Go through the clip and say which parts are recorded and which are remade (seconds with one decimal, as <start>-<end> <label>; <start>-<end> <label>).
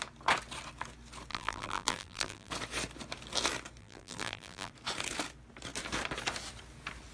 0.0-1.3 recorded; 1.3-2.5 remade; 2.5-3.8 recorded; 3.8-4.7 remade; 4.7-7.1 recorded